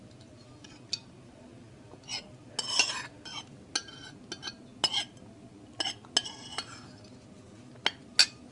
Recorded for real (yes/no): yes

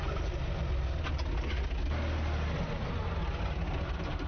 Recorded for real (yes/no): yes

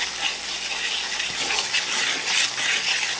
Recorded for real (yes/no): yes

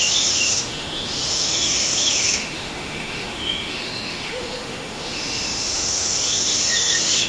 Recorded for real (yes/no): no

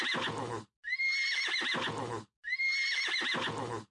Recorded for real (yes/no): yes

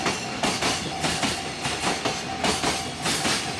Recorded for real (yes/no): yes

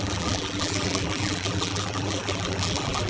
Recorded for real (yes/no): no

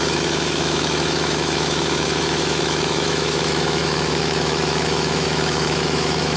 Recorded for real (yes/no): no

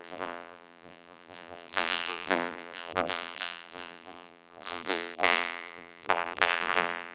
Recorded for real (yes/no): no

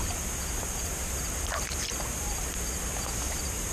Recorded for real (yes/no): no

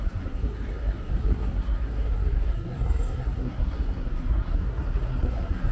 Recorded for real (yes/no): no